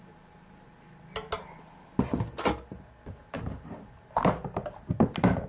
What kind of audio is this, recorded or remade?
recorded